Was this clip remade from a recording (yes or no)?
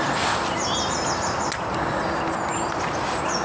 no